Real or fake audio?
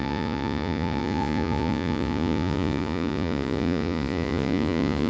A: fake